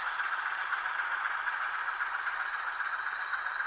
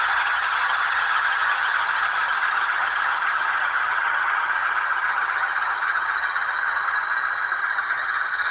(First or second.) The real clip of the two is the first